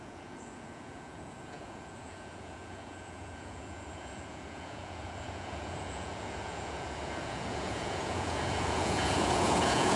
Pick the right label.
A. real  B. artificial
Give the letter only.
B